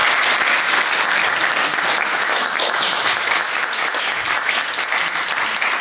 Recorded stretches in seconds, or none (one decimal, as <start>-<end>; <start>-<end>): 0.0-2.1; 4.7-5.8